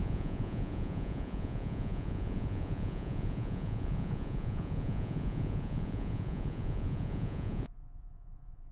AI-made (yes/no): yes